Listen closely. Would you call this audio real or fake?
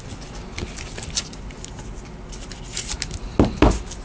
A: real